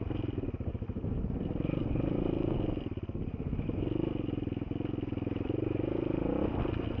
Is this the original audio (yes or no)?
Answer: yes